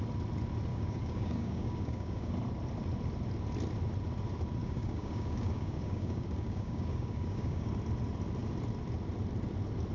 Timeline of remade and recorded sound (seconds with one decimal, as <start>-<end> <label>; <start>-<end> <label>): 0.0-0.7 recorded; 0.7-2.3 remade; 2.3-4.6 recorded; 4.6-7.7 remade; 7.7-9.9 recorded

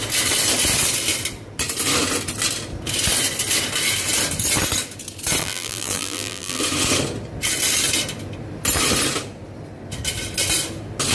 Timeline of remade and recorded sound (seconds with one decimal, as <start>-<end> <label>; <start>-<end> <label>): 0.0-5.4 recorded; 5.4-6.6 remade; 6.6-11.1 recorded

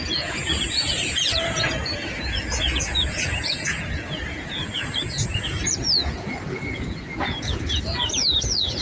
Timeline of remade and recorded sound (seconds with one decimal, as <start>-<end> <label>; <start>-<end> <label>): 0.0-8.8 remade

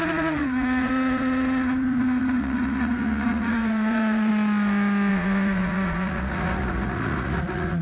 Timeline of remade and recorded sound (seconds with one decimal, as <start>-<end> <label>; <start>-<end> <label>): 0.0-4.3 remade; 4.3-5.1 recorded; 5.1-7.8 remade

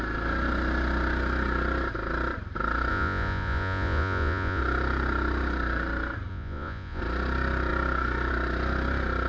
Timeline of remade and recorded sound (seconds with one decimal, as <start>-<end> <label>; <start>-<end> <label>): 0.0-2.9 recorded; 2.9-4.6 remade; 4.6-6.3 recorded; 6.3-7.0 remade; 7.0-9.3 recorded

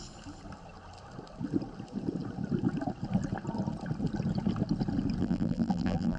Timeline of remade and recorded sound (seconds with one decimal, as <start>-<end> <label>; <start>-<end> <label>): 0.0-5.2 recorded; 5.2-6.2 remade